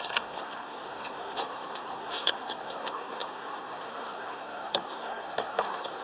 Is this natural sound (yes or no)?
no